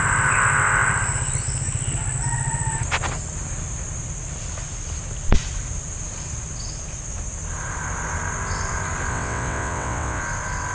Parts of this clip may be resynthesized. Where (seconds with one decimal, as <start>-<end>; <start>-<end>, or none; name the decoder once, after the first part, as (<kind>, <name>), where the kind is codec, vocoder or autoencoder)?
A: 9.1-10.2 (vocoder, WaveNeXt)